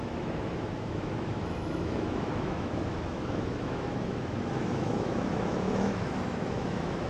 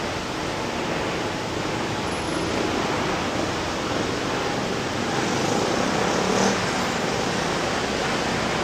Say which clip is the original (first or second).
second